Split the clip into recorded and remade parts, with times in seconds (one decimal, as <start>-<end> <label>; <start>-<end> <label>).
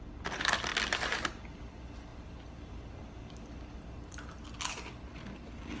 0.0-5.8 recorded